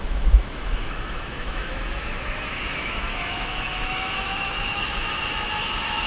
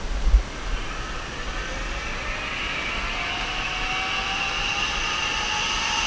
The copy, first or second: first